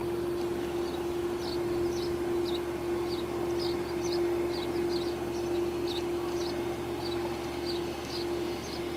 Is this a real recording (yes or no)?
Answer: yes